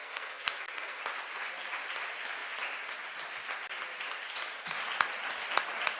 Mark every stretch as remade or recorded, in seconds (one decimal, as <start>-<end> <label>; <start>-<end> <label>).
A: 0.0-1.0 remade; 1.0-6.0 recorded